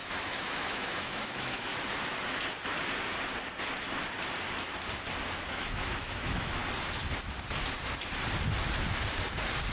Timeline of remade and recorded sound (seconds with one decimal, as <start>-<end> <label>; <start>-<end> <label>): 0.0-1.7 remade; 1.7-5.5 recorded; 5.5-6.6 remade; 6.6-9.7 recorded

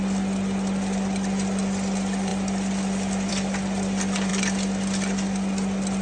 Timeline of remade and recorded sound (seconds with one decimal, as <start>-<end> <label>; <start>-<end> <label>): 0.0-6.0 recorded